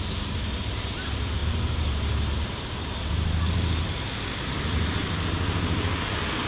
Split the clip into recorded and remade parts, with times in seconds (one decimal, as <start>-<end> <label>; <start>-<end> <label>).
0.0-6.5 recorded